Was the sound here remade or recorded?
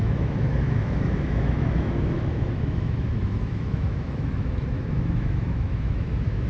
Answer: remade